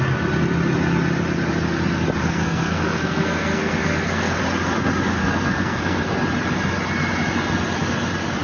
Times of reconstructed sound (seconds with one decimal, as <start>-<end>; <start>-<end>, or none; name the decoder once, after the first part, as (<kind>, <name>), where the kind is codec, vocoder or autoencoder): 2.2-4.4 (codec, SNAC); 5.2-6.1